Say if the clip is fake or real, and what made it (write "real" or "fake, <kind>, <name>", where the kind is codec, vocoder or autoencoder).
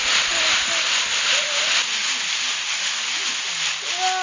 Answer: real